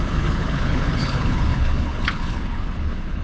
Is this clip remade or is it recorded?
remade